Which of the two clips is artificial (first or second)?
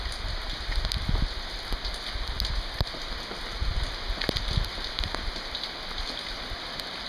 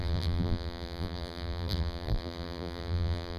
second